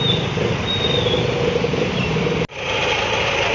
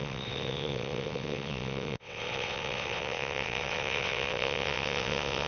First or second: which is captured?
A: first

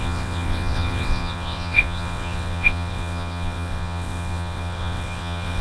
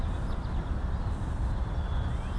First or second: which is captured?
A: second